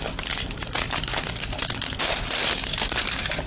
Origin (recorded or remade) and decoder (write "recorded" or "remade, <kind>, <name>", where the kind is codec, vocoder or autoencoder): recorded